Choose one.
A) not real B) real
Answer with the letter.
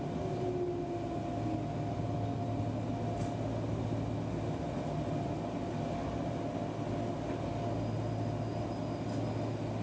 B